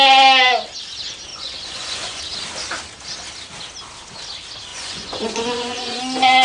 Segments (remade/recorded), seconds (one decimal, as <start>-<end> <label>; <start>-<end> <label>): 0.0-1.3 recorded; 1.3-2.2 remade; 2.2-4.7 recorded; 4.7-6.0 remade; 6.0-6.4 recorded